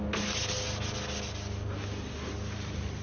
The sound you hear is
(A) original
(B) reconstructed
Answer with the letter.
A